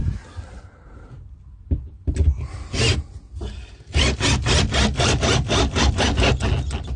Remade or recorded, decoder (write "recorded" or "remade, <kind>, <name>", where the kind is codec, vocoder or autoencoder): recorded